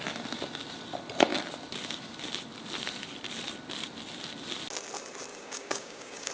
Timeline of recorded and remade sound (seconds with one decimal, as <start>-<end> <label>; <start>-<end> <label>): 0.0-5.3 recorded; 5.3-6.3 remade

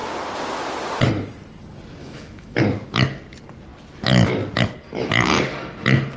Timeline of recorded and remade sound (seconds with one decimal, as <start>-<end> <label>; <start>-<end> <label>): 0.0-2.0 recorded; 2.0-2.6 remade; 2.6-6.2 recorded

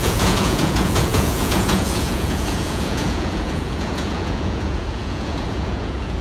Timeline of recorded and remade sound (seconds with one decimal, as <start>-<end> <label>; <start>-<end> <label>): 0.0-6.2 remade

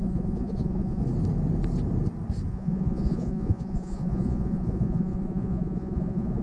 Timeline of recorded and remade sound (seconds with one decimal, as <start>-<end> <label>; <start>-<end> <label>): 0.0-1.0 remade; 1.0-2.5 recorded; 2.5-6.4 remade

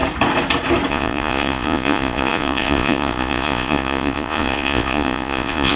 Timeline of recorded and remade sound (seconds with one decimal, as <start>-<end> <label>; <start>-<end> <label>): 0.0-0.9 recorded; 0.9-5.8 remade

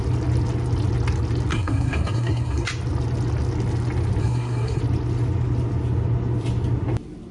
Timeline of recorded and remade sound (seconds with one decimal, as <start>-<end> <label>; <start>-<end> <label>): 0.0-1.5 recorded; 1.5-2.7 remade; 2.7-4.2 recorded; 4.2-4.8 remade; 4.8-7.3 recorded

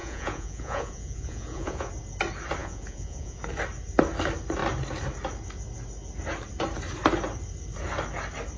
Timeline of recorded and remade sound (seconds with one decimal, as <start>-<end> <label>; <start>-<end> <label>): 0.0-1.9 remade; 1.9-2.6 recorded; 2.6-3.4 remade; 3.4-8.6 recorded